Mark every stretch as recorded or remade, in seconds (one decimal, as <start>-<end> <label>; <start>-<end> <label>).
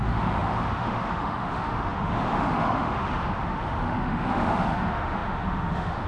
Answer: 0.0-6.1 remade